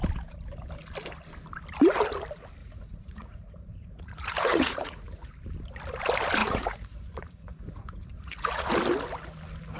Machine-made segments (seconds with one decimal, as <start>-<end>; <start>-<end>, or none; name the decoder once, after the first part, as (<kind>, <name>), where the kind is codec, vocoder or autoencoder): 2.6-5.3 (vocoder, Vocos); 6.4-8.7